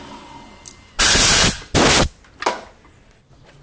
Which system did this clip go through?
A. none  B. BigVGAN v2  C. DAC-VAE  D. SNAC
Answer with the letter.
A